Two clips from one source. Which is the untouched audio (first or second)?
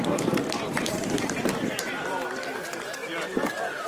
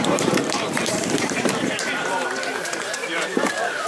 first